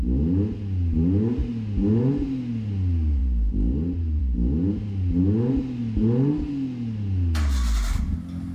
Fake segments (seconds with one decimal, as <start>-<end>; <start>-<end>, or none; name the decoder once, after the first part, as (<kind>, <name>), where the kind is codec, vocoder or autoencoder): none